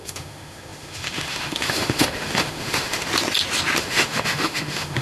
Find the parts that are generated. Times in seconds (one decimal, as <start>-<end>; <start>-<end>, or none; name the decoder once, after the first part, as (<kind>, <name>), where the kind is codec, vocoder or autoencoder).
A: 0.0-3.1 (autoencoder, DAC-VAE); 3.8-5.0